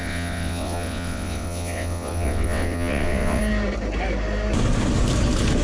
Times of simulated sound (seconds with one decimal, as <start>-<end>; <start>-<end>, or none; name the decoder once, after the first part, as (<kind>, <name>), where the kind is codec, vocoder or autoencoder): 0.0-3.4 (vocoder, WaveNeXt)